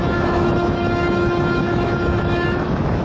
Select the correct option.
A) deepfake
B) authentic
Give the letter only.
A